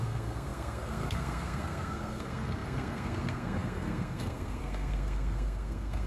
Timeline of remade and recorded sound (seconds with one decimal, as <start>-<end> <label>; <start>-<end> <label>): 0.0-6.1 remade